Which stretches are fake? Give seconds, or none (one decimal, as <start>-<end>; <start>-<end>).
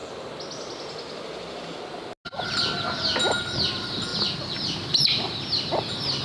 none